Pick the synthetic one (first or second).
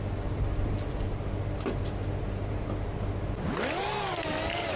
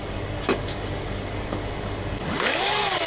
second